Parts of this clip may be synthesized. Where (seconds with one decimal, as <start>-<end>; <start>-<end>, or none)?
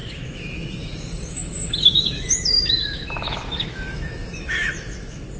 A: 0.0-5.4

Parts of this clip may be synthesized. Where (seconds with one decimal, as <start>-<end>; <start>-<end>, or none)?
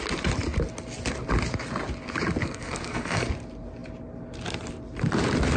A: 2.4-3.3